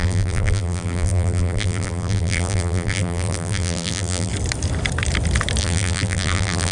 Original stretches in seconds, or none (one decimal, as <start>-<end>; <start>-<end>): 4.3-5.6